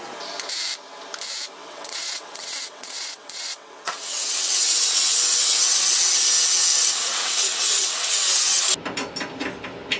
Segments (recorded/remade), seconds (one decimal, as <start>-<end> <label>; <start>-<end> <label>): 0.0-1.6 recorded; 1.6-6.0 remade; 6.0-6.7 recorded; 6.7-8.6 remade; 8.6-10.0 recorded